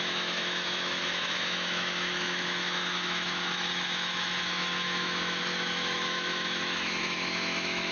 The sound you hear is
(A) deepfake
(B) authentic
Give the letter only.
A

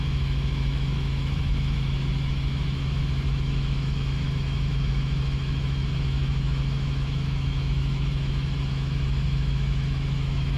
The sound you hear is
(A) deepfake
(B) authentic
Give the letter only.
A